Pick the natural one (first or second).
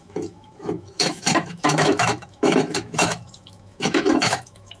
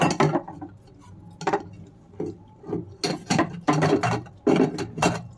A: second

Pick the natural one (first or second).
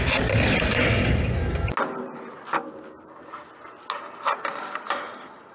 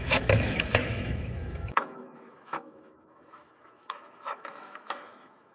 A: first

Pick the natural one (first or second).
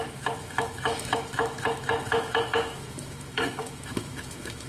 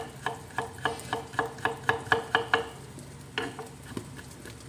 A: second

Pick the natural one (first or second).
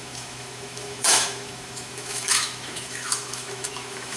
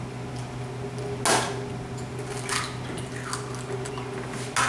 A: second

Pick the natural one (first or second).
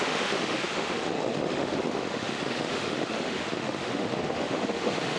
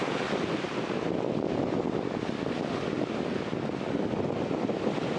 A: second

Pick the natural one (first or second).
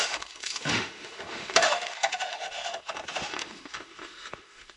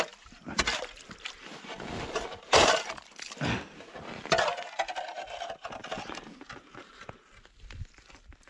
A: second